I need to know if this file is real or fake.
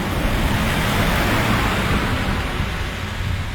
real